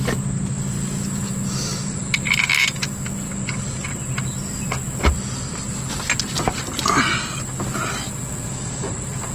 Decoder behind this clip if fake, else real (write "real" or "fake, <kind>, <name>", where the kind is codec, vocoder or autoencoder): real